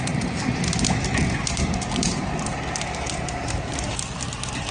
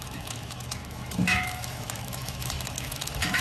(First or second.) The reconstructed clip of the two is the second